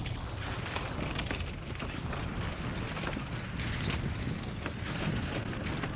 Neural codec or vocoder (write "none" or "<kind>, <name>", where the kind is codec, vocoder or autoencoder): none